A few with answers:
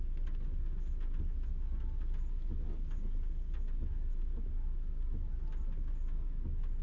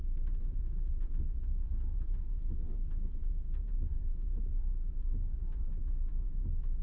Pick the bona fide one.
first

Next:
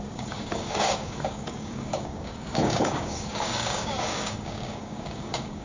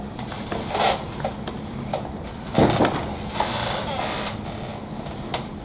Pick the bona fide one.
second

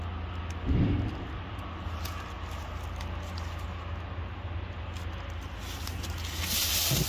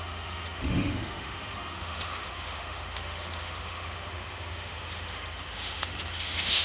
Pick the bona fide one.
first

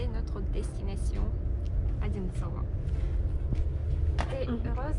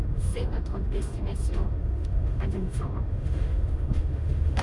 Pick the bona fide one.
first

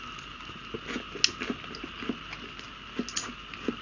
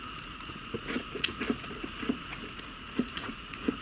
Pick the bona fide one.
first